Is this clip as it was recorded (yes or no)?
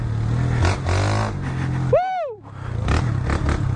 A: yes